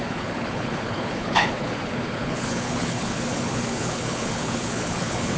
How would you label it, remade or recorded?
remade